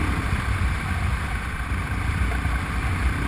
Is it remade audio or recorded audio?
recorded